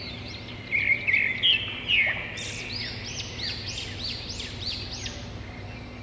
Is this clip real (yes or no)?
yes